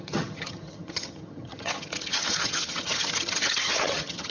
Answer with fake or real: fake